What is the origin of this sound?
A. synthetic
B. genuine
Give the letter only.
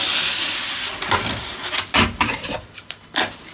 B